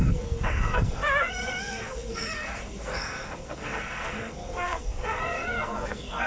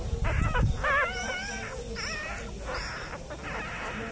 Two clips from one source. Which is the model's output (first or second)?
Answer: first